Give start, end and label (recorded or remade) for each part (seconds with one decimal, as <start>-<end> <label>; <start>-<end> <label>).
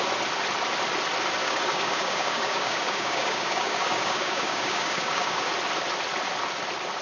0.0-1.4 recorded; 1.4-5.5 remade; 5.5-7.0 recorded